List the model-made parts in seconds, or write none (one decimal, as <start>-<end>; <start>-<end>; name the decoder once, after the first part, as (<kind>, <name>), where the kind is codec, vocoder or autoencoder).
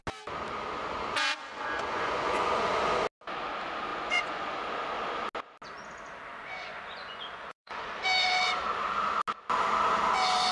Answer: 0.8-2.8 (vocoder, Vocos); 3.9-4.5; 6.3-7.9